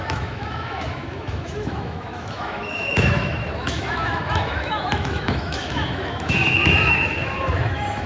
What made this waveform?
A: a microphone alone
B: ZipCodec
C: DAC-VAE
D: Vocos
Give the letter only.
C